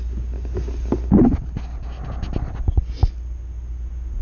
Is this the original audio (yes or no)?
yes